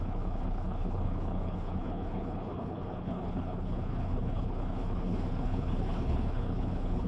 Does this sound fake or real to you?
fake